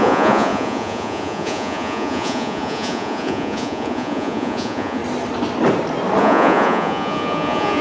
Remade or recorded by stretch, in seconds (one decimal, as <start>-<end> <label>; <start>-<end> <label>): 0.0-5.0 remade; 5.0-6.2 recorded; 6.2-7.8 remade